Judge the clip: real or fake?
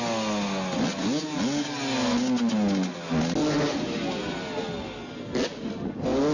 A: real